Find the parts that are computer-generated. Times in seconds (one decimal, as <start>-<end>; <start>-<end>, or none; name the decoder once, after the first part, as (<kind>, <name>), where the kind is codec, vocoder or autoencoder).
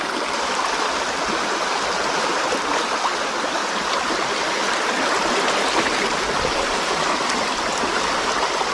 none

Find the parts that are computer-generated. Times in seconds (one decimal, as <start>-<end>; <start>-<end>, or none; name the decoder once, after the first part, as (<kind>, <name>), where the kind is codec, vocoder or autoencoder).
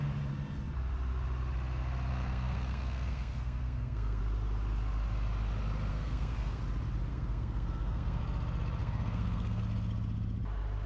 2.1-4.2 (codec, SNAC); 5.9-6.6; 7.1-8.2; 8.8-9.6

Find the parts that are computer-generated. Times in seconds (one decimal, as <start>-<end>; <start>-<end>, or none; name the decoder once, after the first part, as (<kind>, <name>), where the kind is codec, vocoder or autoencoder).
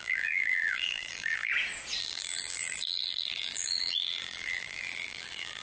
0.0-1.5 (vocoder, BigVGAN v2); 2.0-5.6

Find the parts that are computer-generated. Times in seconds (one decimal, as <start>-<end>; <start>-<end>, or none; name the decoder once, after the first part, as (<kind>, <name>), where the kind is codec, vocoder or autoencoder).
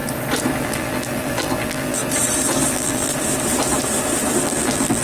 0.6-2.0 (vocoder, BigVGAN v2); 2.7-3.1; 4.4-5.0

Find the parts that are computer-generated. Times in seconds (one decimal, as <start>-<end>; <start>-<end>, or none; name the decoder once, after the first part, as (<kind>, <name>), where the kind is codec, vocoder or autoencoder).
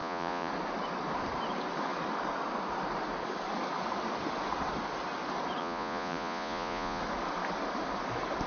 0.0-0.5 (vocoder, Vocos); 5.6-7.0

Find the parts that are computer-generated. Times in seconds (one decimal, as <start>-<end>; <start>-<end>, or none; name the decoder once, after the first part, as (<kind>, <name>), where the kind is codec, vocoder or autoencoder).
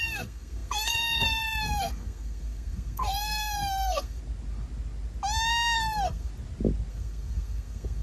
0.0-4.2 (codec, SNAC); 5.5-6.3; 6.9-8.0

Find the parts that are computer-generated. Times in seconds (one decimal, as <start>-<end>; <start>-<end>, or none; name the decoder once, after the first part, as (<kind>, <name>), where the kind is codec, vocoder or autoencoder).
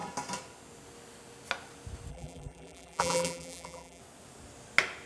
2.1-4.0 (vocoder, BigVGAN v2)